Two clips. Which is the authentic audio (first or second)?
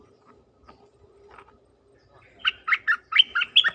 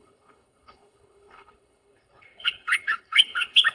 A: first